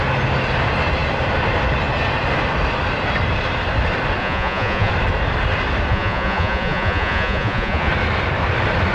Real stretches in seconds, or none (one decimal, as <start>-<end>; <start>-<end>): 0.0-4.2; 4.9-5.9; 7.9-8.9